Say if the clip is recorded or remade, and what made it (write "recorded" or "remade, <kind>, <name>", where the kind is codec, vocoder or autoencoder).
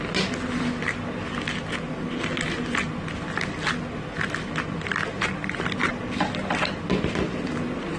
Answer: recorded